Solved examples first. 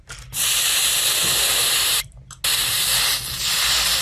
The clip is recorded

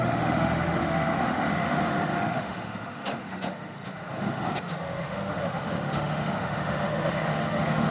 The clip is remade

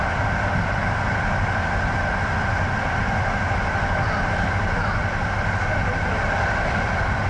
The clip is recorded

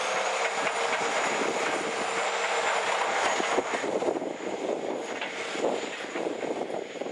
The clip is recorded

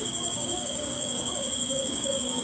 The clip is remade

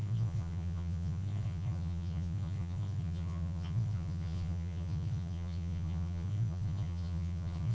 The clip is remade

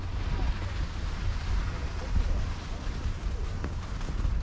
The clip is recorded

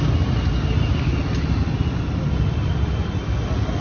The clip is recorded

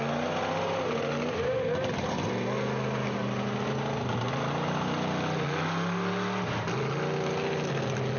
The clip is recorded